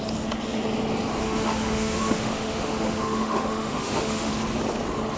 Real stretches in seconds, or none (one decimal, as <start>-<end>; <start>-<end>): 0.0-1.2; 4.3-5.2